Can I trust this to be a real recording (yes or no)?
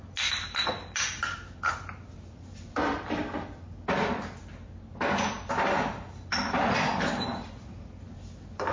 yes